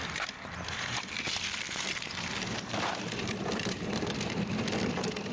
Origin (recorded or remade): remade